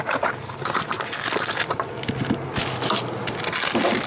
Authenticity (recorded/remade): recorded